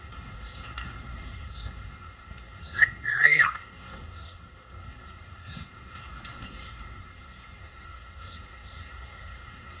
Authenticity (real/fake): fake